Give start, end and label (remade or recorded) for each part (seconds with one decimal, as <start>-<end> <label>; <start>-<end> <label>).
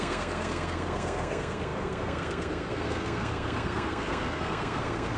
0.0-5.2 remade